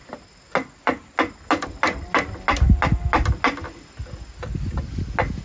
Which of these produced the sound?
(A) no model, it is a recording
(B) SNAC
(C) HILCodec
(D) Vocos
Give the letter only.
A